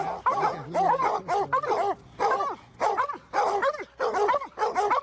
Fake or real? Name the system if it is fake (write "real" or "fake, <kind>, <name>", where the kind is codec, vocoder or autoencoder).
real